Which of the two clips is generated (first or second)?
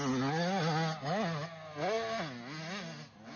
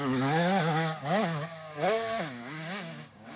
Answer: second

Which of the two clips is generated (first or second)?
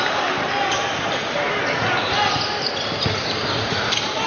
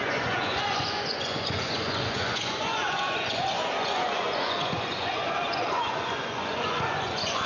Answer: second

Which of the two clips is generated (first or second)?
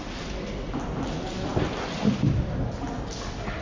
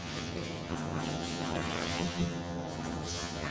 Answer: second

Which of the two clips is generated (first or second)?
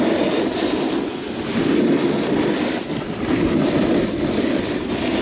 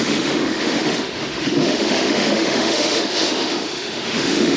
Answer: second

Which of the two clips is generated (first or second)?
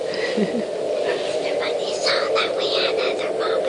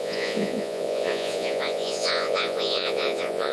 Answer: second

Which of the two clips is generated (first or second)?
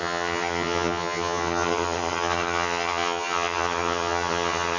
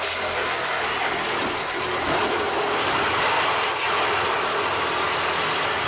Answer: first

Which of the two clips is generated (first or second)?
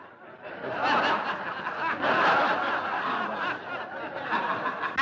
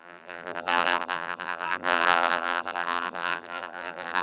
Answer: second